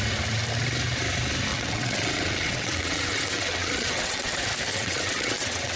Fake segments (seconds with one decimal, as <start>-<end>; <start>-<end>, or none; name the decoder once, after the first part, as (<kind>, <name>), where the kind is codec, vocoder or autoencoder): 1.5-4.3 (vocoder, WaveNeXt); 4.7-5.8